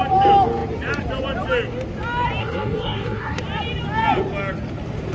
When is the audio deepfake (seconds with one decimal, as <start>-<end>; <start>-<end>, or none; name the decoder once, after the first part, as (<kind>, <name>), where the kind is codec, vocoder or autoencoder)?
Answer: 2.4-3.4 (codec, SNAC)